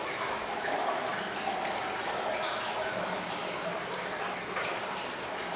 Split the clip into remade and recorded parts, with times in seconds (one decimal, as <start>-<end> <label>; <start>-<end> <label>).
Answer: 0.0-1.1 remade; 1.1-2.3 recorded; 2.3-3.4 remade; 3.4-5.6 recorded